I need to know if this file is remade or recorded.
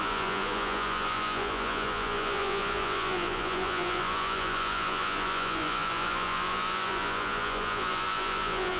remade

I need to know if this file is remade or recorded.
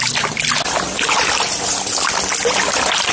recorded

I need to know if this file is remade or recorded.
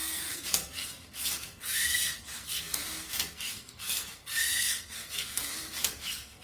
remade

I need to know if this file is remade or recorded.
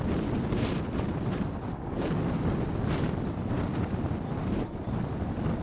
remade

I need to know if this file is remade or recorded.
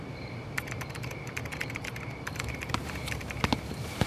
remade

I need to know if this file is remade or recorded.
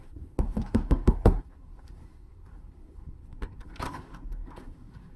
remade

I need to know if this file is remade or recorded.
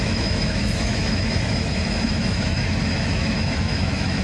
remade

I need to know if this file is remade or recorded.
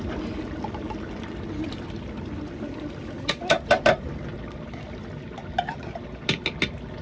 recorded